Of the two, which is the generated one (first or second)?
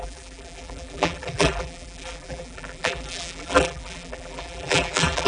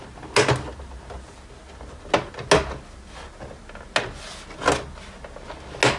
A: first